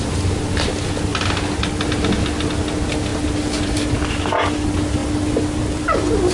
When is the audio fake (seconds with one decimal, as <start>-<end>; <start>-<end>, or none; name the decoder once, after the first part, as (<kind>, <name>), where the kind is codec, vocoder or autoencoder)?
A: none